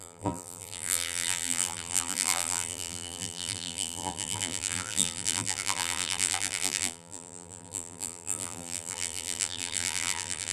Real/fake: fake